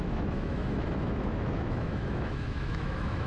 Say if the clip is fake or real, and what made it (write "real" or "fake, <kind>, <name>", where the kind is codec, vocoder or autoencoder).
fake, autoencoder, DAC-VAE